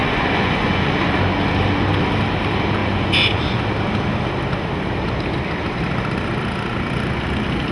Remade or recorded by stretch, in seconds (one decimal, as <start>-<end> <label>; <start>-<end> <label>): 0.0-0.9 remade; 0.9-2.8 recorded; 2.8-3.6 remade; 3.6-7.7 recorded

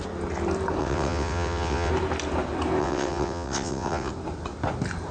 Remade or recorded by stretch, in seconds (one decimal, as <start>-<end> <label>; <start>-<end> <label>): 0.0-0.8 recorded; 0.8-1.9 remade; 1.9-2.8 recorded; 2.8-4.1 remade; 4.1-5.1 recorded

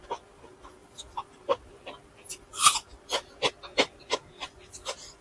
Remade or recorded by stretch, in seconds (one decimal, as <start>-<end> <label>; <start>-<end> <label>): 0.0-0.8 recorded; 0.8-2.3 remade; 2.3-5.2 recorded